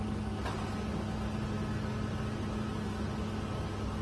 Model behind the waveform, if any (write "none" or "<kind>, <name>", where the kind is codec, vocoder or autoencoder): none